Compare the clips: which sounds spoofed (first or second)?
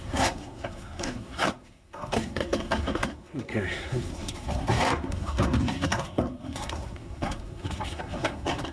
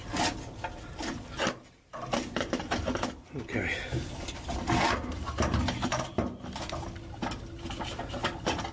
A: first